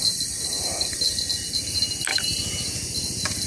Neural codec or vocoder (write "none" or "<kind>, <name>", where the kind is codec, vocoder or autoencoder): vocoder, BigVGAN v2